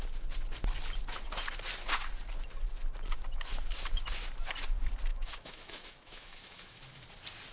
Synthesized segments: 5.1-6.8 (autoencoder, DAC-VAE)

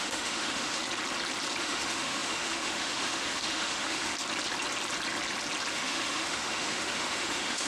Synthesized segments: 0.0-0.8 (autoencoder, DAC-VAE); 1.6-4.1; 5.7-7.7

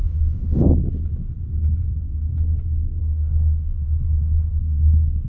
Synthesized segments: 0.0-0.7 (autoencoder, DAC-VAE); 3.0-4.6

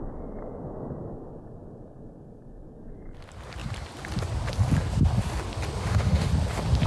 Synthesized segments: 5.8-6.3 (autoencoder, DAC-VAE)

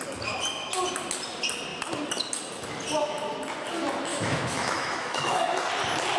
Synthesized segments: 4.1-5.6 (autoencoder, DAC-VAE)

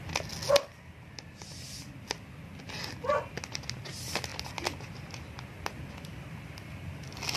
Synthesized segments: none